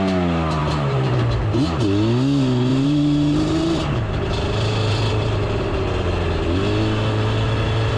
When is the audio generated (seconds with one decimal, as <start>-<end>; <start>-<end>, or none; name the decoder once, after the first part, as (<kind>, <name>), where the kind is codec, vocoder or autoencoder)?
0.6-1.2 (vocoder, BigVGAN v2); 2.7-5.8